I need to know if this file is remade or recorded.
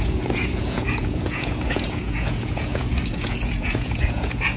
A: remade